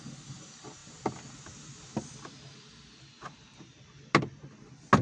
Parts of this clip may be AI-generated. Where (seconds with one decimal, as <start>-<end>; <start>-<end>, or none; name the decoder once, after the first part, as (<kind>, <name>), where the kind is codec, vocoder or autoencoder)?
none